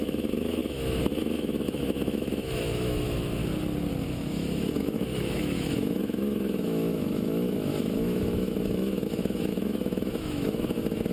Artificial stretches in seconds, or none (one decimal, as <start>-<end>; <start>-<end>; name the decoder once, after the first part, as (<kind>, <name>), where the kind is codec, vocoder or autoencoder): 0.0-3.4 (autoencoder, DAC-VAE); 4.1-11.1